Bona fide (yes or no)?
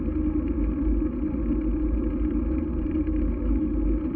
yes